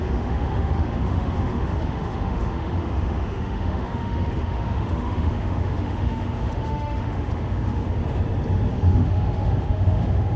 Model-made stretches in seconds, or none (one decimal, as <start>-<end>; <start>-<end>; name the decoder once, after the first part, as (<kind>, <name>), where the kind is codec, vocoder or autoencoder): 0.0-8.0 (autoencoder, DAC-VAE); 8.7-10.4